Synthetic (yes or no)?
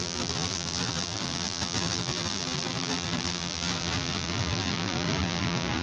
yes